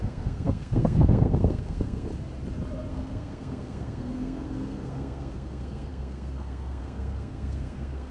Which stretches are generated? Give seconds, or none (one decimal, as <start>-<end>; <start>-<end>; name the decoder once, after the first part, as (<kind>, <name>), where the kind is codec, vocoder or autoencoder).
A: 0.0-2.1 (codec, SNAC); 2.9-8.1